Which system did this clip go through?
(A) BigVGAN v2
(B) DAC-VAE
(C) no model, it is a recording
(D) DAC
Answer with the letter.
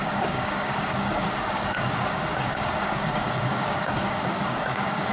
D